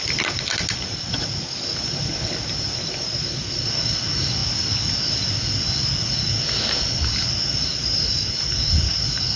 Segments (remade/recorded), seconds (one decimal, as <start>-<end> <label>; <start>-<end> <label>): 0.0-9.4 recorded

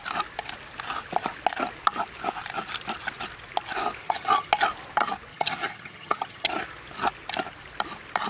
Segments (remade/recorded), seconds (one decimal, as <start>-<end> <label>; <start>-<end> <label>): 0.0-4.0 recorded; 4.0-4.5 remade; 4.5-5.3 recorded; 5.3-6.5 remade; 6.5-8.3 recorded

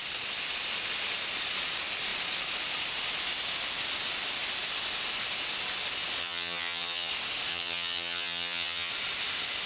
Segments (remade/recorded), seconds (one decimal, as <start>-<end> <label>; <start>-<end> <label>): 0.0-6.2 recorded; 6.2-7.1 remade; 7.1-7.5 recorded; 7.5-8.9 remade; 8.9-9.7 recorded

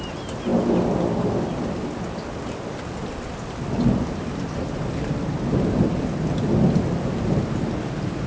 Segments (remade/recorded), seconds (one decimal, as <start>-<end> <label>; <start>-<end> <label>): 0.0-8.3 recorded

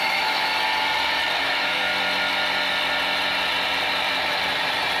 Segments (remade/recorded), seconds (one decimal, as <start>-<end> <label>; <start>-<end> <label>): 0.0-0.5 remade; 0.5-1.4 recorded; 1.4-1.9 remade; 1.9-5.0 recorded

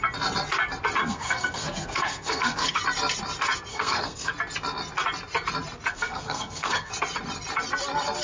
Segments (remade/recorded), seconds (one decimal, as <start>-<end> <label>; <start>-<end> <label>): 0.0-1.0 recorded; 1.0-2.8 remade; 2.8-3.7 recorded; 3.7-4.3 remade; 4.3-5.9 recorded; 5.9-6.9 remade; 6.9-8.2 recorded

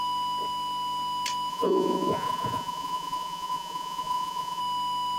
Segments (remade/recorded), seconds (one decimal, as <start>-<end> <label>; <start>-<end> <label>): 0.0-1.5 recorded; 1.5-4.6 remade; 4.6-5.2 recorded